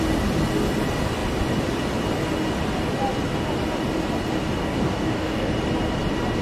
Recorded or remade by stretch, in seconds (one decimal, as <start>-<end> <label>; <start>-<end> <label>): 0.0-4.6 recorded; 4.6-5.5 remade; 5.5-6.4 recorded